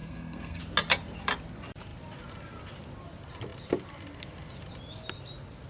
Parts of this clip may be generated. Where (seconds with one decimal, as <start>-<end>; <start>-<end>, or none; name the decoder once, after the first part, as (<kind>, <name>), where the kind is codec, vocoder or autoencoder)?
0.0-0.6 (codec, SNAC)